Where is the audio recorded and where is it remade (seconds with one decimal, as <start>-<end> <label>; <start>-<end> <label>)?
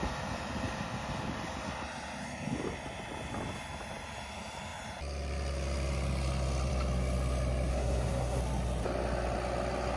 0.0-7.7 recorded; 7.7-8.4 remade; 8.4-10.0 recorded